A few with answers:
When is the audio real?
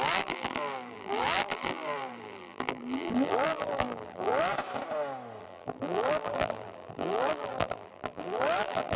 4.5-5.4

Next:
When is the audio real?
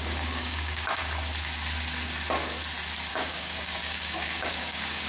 1.0-3.1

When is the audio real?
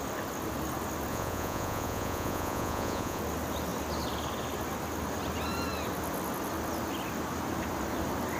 0.0-1.1; 3.2-8.4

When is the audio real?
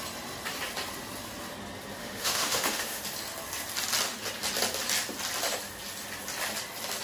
0.0-2.0; 3.0-7.0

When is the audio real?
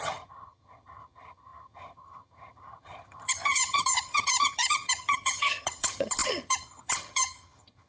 none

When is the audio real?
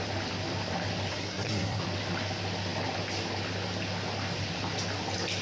0.0-1.1; 1.8-5.4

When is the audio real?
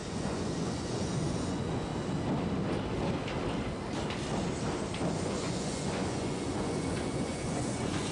1.9-5.1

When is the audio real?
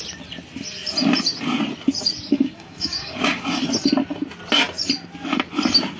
0.0-2.3; 3.6-6.0